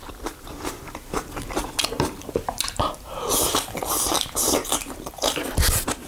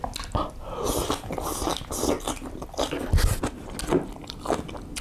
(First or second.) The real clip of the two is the second